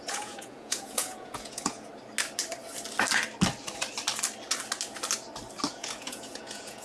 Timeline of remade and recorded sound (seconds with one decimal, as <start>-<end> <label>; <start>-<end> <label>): 0.0-1.9 remade; 1.9-5.7 recorded; 5.7-6.8 remade